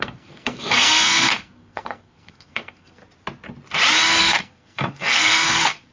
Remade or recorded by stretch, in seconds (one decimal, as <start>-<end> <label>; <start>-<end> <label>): 0.0-3.0 remade; 3.0-4.2 recorded; 4.2-5.9 remade